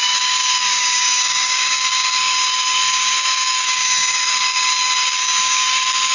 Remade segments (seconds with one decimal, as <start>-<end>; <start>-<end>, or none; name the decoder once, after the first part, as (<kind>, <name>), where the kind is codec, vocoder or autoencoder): 0.0-6.1 (codec, DAC)